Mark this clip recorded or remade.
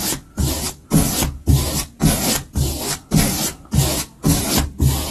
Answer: recorded